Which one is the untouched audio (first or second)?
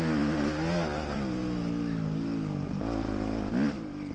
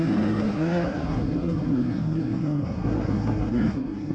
first